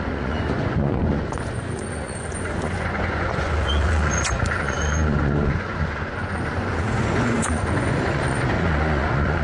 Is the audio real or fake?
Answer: fake